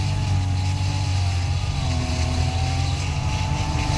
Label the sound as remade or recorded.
recorded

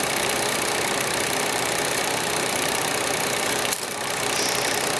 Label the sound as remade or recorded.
remade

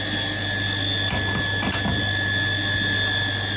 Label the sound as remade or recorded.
recorded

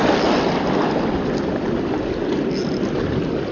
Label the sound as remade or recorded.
recorded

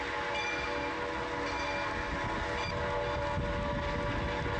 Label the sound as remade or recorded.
recorded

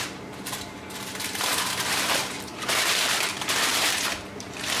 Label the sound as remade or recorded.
remade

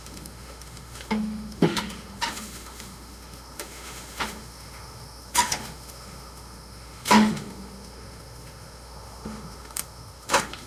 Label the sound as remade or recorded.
remade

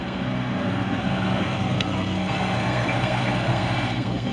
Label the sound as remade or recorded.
remade